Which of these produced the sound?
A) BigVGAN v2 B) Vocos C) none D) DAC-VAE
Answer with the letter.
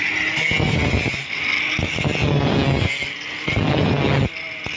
C